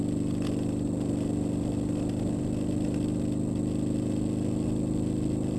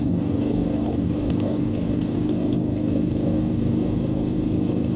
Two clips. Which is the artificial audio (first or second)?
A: second